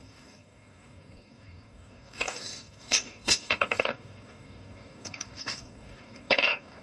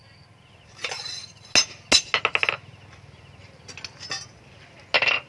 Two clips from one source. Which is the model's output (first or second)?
first